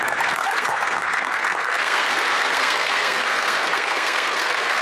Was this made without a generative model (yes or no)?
no